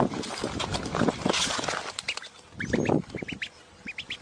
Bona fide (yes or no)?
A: yes